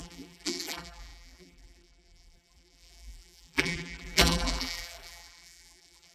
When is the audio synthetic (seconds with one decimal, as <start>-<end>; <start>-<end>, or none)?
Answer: 0.0-6.1